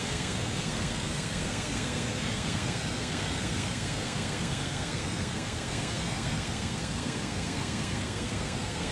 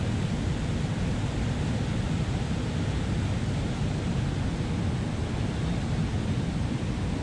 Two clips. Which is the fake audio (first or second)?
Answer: first